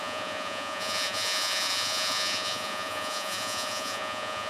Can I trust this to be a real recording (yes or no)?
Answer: no